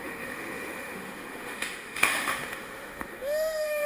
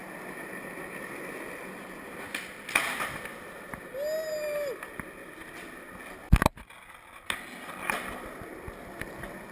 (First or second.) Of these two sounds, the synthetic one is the first